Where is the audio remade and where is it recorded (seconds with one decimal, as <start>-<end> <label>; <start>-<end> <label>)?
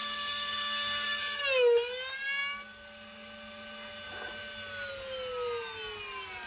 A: 0.0-1.2 remade; 1.2-6.5 recorded